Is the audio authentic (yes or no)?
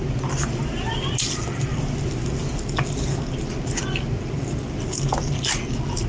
yes